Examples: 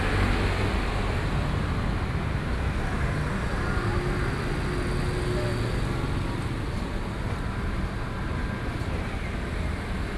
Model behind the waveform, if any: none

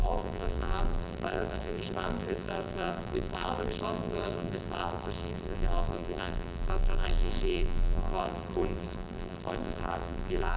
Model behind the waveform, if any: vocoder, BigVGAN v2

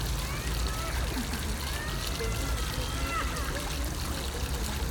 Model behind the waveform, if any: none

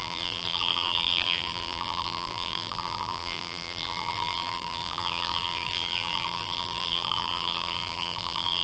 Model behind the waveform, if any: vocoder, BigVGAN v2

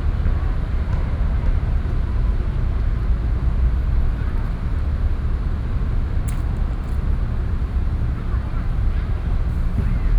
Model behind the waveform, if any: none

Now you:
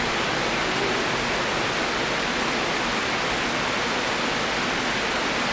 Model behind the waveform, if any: none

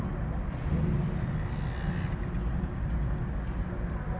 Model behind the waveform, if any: none